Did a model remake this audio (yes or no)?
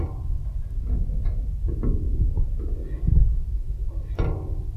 no